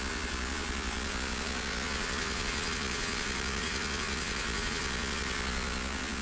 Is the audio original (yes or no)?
no